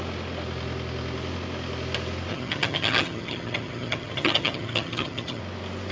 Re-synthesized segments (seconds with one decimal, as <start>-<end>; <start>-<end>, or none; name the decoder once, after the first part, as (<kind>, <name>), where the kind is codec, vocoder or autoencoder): 2.3-5.4 (vocoder, HiFi-GAN)

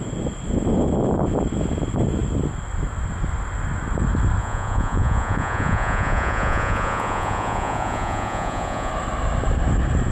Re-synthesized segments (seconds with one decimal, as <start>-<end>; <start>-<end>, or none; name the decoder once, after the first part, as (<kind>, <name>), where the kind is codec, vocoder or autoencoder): 4.4-8.9 (vocoder, Vocos)